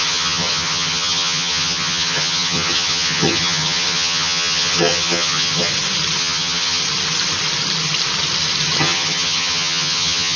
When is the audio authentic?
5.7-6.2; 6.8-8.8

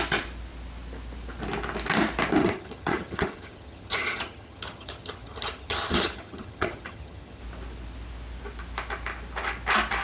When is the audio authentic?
0.0-2.4; 7.4-10.0